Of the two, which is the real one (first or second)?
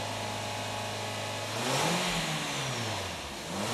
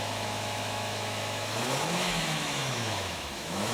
first